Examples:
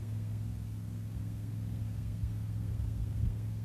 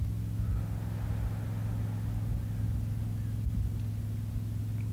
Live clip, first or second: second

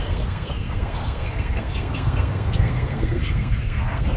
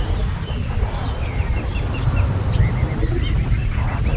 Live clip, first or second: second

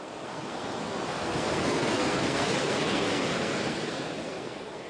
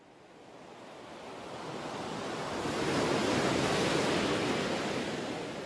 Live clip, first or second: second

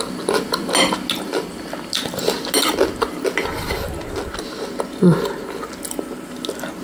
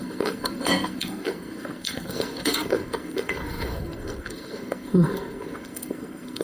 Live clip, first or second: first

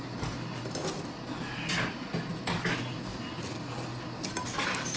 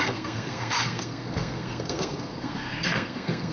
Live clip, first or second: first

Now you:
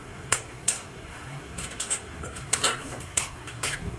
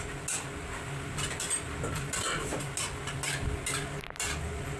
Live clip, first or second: second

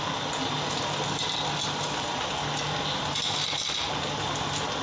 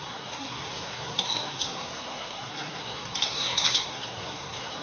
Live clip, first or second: first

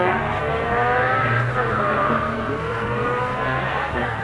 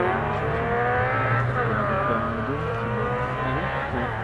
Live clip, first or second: second